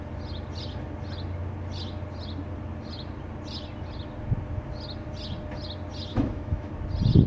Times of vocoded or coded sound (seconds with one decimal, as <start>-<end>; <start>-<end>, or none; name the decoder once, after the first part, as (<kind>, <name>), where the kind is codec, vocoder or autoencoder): 6.1-6.7 (autoencoder, DAC-VAE)